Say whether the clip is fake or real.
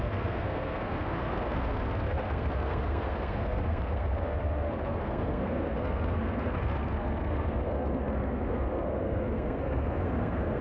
fake